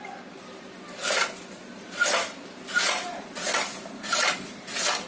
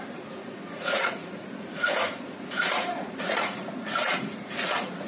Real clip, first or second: first